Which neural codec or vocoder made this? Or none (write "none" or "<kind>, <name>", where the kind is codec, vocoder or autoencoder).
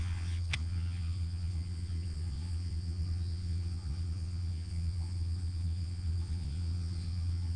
vocoder, Vocos